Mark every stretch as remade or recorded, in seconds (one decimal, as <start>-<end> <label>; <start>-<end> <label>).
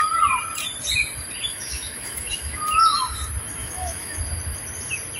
0.0-1.5 recorded; 1.5-2.6 remade; 2.6-3.6 recorded; 3.6-4.2 remade; 4.2-5.2 recorded